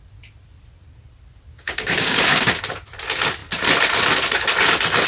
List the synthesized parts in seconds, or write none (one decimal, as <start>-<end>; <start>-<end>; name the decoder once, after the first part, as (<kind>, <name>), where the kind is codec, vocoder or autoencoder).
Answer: 1.5-2.6 (codec, DAC)